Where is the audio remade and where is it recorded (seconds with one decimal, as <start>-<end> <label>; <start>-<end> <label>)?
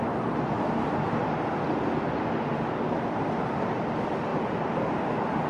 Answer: 0.0-4.3 recorded; 4.3-5.0 remade; 5.0-5.5 recorded